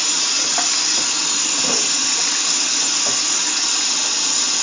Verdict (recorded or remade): recorded